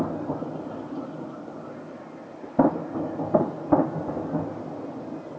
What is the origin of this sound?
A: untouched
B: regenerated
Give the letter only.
A